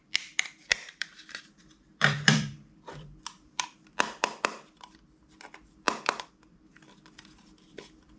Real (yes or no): no